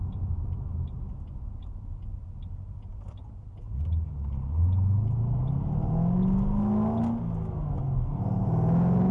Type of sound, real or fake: real